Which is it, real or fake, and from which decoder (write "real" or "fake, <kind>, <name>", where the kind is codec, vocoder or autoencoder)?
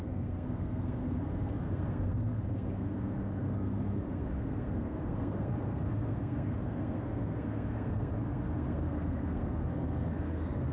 fake, codec, SNAC